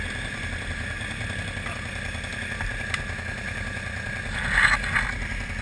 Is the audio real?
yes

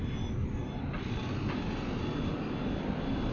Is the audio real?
yes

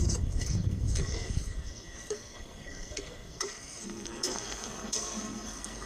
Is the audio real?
no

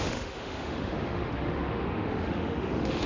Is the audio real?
no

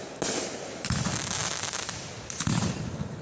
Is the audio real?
yes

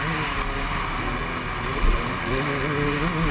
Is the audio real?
yes